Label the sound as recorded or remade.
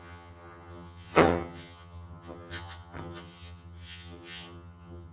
remade